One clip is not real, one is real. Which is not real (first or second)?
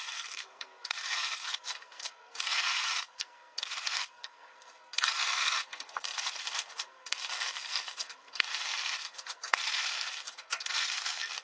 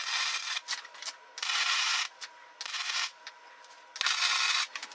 first